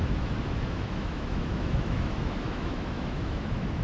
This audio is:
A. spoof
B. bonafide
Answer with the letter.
A